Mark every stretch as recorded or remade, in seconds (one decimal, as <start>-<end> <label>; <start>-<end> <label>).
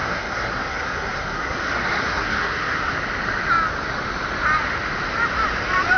0.0-2.9 remade; 2.9-6.0 recorded